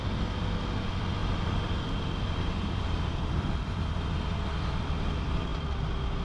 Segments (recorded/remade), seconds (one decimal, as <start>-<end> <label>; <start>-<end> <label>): 0.0-1.2 recorded; 1.2-4.9 remade; 4.9-6.2 recorded